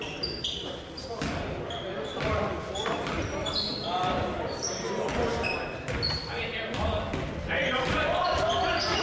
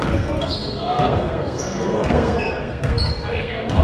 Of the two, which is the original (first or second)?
first